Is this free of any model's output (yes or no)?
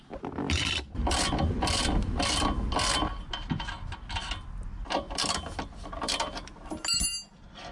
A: yes